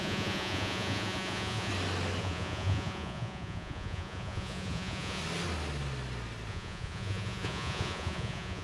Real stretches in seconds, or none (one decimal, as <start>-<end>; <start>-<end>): 1.7-2.2; 5.2-6.5